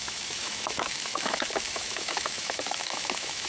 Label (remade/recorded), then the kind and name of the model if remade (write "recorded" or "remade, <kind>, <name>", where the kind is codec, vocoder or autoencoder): remade, autoencoder, DAC-VAE